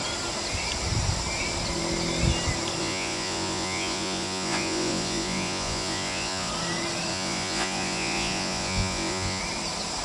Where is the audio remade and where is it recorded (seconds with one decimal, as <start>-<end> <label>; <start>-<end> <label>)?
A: 0.0-2.8 recorded; 2.8-6.5 remade; 6.5-7.1 recorded; 7.1-9.4 remade; 9.4-10.0 recorded